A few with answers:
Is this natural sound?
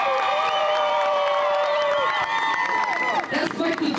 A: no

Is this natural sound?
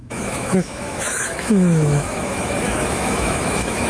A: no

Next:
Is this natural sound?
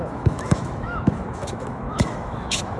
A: no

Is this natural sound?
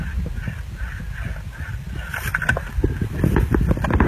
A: yes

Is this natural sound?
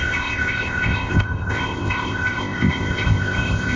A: no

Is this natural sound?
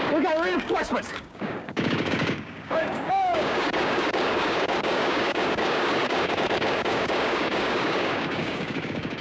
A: no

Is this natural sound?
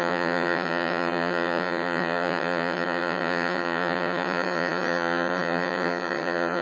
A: no